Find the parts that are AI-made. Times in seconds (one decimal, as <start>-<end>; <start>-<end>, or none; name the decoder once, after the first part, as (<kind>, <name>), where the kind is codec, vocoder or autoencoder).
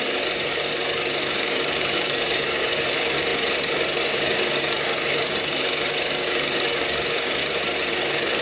0.0-7.4 (codec, DAC); 7.9-8.4